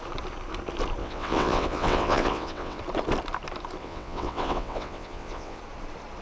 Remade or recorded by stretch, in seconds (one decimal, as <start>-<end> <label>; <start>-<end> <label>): 0.0-1.0 recorded; 1.0-2.8 remade; 2.8-3.8 recorded; 3.8-5.6 remade; 5.6-6.2 recorded